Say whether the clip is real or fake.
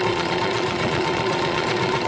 fake